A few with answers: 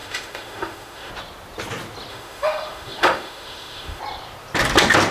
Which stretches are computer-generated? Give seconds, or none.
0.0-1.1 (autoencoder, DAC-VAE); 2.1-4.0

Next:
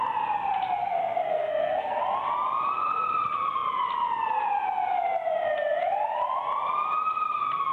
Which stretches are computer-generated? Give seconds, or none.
0.8-2.0 (codec, SNAC)

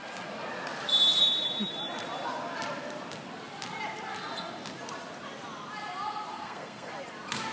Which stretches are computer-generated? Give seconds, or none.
6.3-6.9 (codec, SNAC)

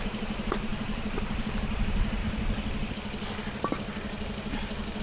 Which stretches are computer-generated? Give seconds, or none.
0.0-2.2 (vocoder, BigVGAN v2)

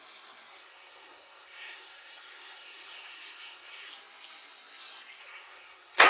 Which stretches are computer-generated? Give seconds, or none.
0.5-3.9 (codec, SNAC); 5.2-6.1

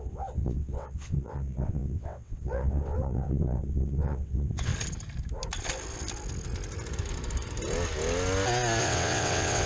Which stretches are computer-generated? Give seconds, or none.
0.0-4.7 (vocoder, WaveNeXt); 8.8-9.7

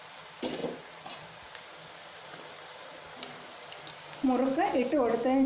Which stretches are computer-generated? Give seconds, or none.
none